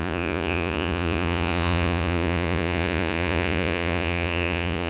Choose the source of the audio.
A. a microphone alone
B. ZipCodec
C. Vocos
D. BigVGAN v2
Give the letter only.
C